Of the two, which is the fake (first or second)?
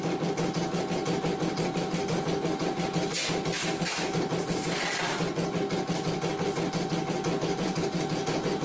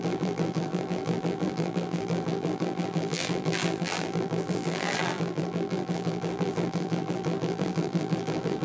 second